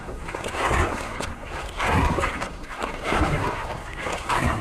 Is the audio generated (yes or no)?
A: yes